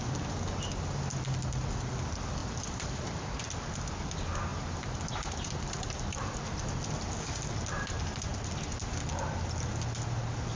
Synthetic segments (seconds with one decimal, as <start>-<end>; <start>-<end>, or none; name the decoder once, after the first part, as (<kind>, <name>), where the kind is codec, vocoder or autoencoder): 2.4-3.1 (vocoder, BigVGAN v2); 4.5-6.4